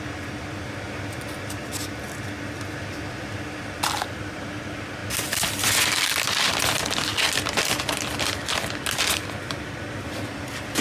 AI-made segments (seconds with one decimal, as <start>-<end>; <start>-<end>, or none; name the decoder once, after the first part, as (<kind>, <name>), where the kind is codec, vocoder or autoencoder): none